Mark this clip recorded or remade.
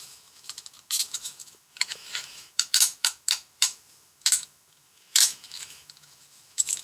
remade